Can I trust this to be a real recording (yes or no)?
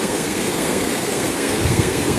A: no